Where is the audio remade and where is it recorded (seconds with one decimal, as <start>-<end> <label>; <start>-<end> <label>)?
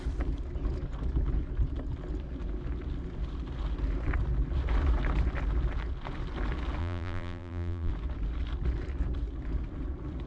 0.0-6.8 recorded; 6.8-7.9 remade; 7.9-10.3 recorded